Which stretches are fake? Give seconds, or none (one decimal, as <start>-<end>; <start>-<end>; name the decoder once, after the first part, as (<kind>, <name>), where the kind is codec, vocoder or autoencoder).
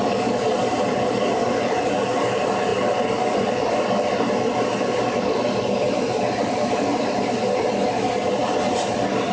none